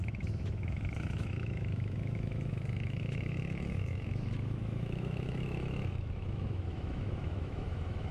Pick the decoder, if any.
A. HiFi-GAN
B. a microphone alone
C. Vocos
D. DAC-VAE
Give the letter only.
D